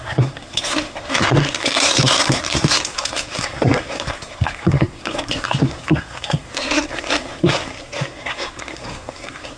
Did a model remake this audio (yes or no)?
yes